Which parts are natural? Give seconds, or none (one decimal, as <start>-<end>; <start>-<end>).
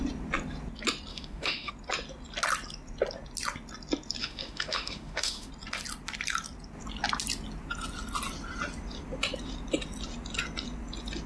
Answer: 0.0-1.1; 1.7-4.2; 5.5-11.3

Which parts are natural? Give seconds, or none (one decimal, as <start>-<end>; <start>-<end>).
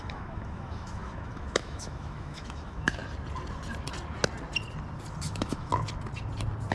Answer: 3.0-5.2; 5.7-6.7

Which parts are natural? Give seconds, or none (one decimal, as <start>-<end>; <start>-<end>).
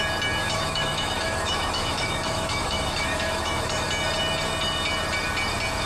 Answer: 0.0-0.4; 3.9-5.9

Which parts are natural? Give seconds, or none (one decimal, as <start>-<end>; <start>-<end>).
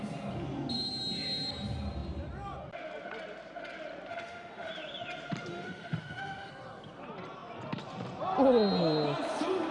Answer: 0.0-4.1; 4.7-5.5; 6.5-9.7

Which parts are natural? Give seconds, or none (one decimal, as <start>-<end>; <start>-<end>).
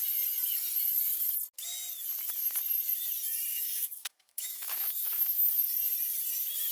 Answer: 0.0-3.5; 5.2-6.7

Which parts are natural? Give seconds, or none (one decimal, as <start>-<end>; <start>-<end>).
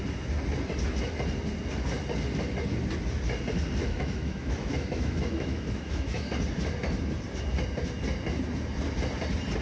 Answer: 0.0-3.8; 6.3-9.6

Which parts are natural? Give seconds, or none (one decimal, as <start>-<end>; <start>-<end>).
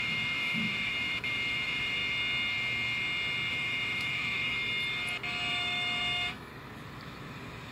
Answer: 2.0-3.5; 4.6-5.5; 6.5-7.7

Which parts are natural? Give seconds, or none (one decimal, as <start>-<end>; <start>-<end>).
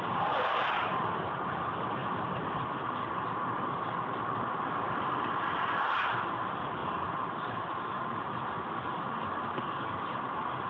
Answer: 0.0-10.7